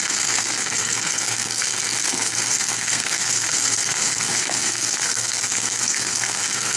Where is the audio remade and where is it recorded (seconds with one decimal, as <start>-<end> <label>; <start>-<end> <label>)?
0.0-6.8 remade

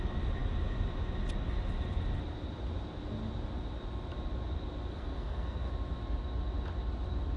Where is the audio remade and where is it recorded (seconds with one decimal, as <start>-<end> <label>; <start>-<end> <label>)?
0.0-4.9 recorded; 4.9-5.7 remade; 5.7-7.4 recorded